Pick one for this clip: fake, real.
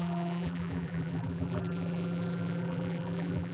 fake